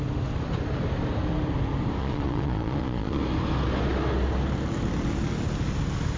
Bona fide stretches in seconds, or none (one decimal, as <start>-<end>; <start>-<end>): 0.0-2.0; 3.2-6.2